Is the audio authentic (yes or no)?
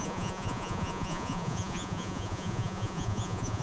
no